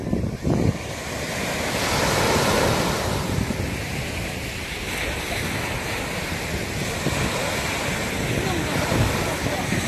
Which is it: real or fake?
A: real